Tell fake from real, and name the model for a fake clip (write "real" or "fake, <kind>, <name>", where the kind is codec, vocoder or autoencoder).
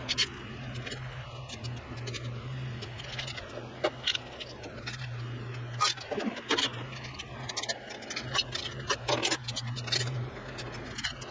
real